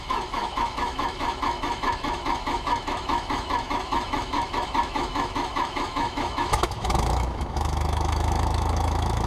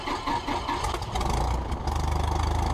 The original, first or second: second